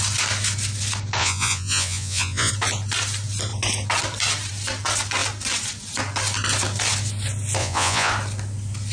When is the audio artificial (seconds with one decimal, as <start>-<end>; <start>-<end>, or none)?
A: 1.2-2.5; 7.6-8.1